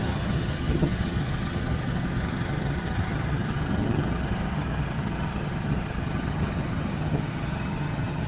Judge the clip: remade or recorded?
remade